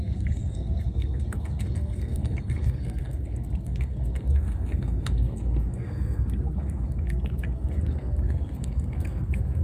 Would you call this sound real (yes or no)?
no